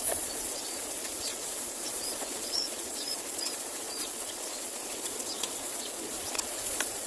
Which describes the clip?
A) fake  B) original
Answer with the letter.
A